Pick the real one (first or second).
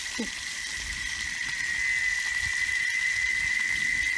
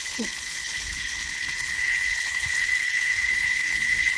first